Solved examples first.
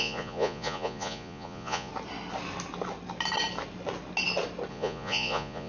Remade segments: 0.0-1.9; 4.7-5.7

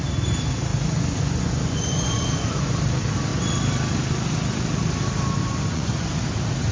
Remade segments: 0.7-2.8; 5.4-6.1

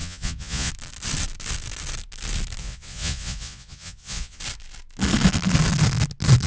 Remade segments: 0.0-0.7; 2.6-4.4

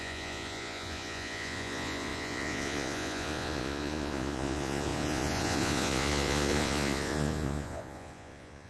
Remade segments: 0.0-8.7

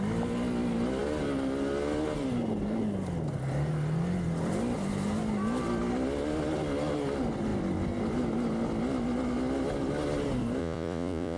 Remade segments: 10.6-11.4

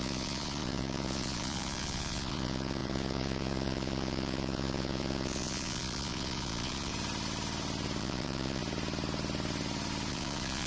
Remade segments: 0.0-6.9; 8.0-8.6; 10.1-10.7

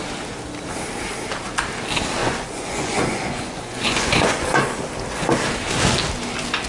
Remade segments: 2.2-4.6

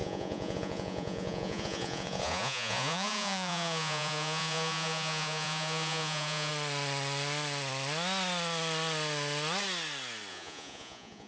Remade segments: 0.0-6.5; 10.3-11.3